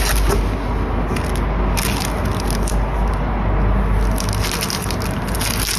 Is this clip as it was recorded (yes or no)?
yes